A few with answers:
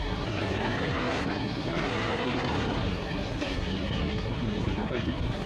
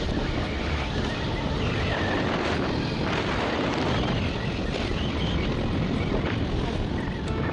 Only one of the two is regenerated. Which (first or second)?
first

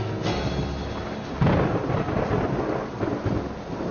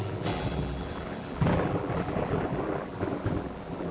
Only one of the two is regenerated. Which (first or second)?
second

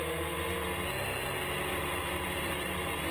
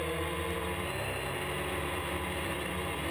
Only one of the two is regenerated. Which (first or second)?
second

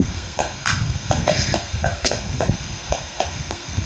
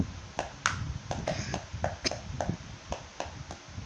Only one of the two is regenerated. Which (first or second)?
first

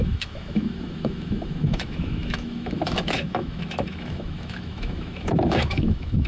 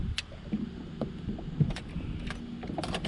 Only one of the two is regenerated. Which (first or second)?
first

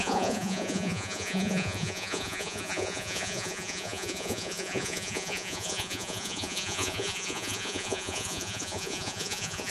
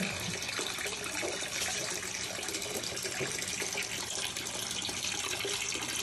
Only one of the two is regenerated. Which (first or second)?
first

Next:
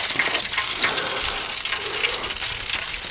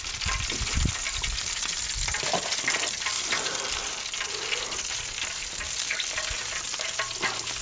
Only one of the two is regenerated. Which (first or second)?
second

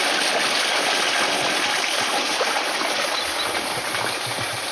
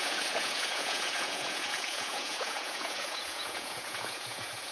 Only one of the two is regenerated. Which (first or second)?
second